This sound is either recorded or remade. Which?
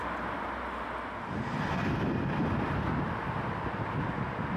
recorded